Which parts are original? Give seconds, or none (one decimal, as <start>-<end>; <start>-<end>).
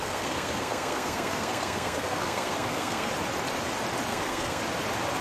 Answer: 3.1-4.1; 4.6-5.2